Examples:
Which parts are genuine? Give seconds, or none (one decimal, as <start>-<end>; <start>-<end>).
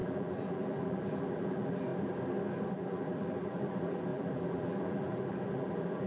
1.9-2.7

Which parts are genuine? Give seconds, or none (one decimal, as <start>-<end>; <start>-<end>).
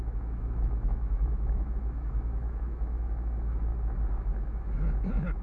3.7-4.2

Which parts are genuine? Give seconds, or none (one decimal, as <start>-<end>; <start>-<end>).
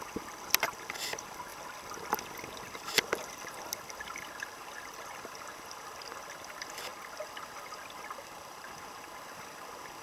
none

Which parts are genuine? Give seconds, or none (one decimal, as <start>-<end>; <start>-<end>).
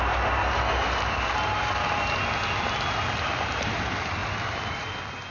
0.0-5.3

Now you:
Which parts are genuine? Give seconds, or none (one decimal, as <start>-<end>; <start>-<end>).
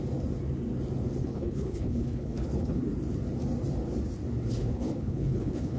0.0-1.2; 2.8-4.6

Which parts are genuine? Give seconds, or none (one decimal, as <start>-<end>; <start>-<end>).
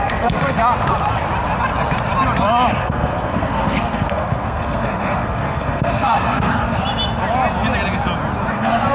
0.6-2.7; 6.8-8.5